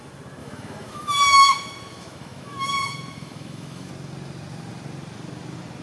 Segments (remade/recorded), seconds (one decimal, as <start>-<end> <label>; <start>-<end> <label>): 0.0-0.4 recorded; 0.4-3.9 remade; 3.9-5.8 recorded